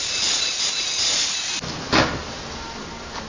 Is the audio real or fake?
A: real